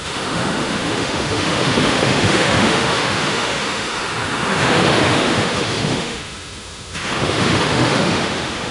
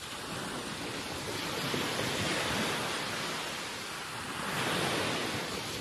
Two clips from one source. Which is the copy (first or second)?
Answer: first